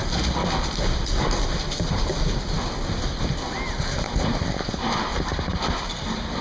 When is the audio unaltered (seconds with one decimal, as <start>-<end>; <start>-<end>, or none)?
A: 0.0-5.1; 5.9-6.4